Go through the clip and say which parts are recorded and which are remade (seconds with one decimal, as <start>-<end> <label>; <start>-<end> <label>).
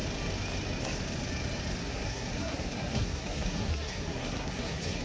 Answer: 0.0-1.8 recorded; 1.8-5.0 remade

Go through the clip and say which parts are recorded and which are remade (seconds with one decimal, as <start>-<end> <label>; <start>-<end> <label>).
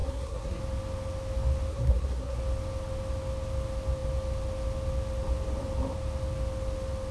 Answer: 0.0-0.6 remade; 0.6-1.7 recorded; 1.7-2.4 remade; 2.4-7.1 recorded